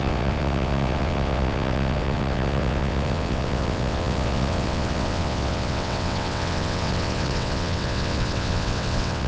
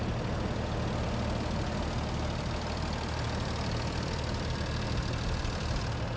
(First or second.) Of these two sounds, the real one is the second